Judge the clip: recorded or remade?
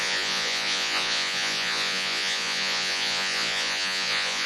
remade